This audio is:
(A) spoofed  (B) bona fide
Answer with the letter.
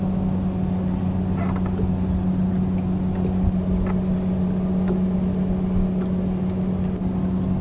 B